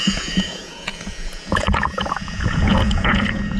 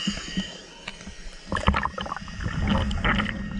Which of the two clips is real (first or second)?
second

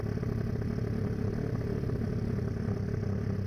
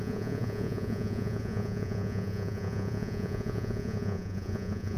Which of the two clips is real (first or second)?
first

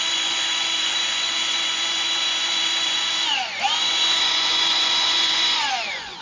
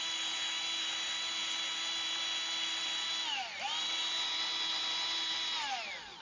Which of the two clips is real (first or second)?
second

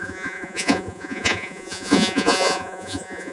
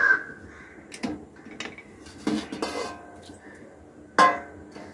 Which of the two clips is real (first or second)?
second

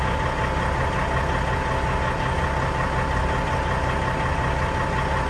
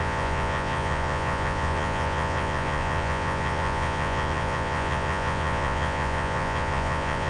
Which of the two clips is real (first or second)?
first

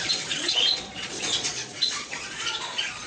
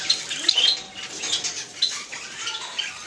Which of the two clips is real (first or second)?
second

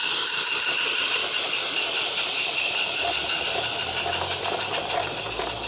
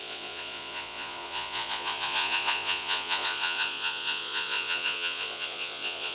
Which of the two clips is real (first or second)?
first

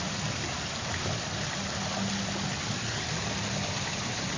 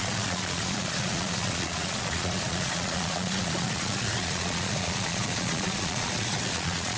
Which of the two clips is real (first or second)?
first